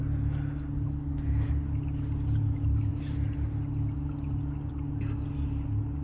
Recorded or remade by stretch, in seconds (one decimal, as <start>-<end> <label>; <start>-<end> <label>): 0.0-6.0 recorded